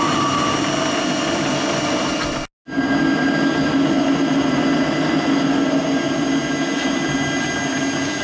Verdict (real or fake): real